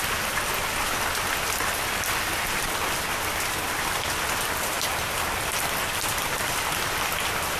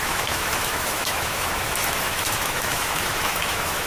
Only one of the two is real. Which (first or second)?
first